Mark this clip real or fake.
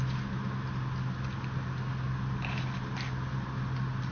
real